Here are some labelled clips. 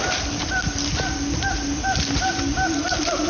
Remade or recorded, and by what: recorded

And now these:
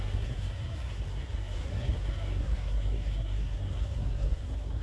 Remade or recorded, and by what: remade, codec, SNAC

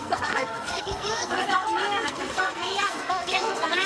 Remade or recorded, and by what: remade, codec, SNAC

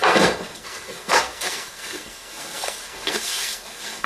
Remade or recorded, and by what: remade, codec, SNAC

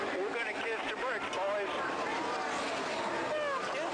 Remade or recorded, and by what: recorded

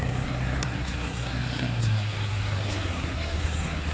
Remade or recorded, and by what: remade, codec, SNAC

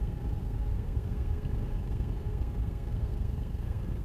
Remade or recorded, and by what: remade, codec, SNAC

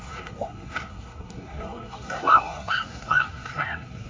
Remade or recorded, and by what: remade, codec, SNAC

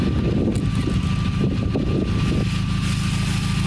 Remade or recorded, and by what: recorded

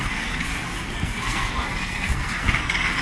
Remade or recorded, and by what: remade, codec, SNAC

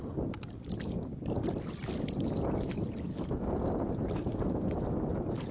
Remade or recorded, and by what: recorded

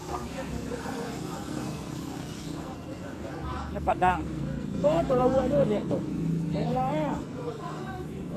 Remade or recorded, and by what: remade, codec, SNAC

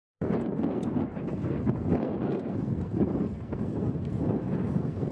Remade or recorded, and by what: remade, codec, SNAC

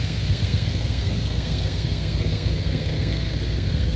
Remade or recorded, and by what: remade, codec, SNAC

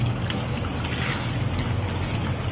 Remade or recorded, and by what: recorded